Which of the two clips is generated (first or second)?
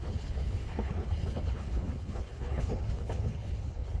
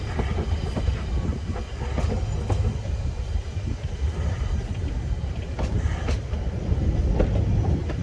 first